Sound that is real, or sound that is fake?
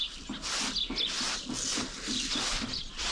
real